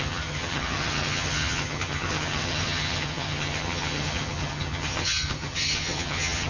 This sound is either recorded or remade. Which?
remade